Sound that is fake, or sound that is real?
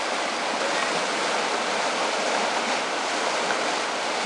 real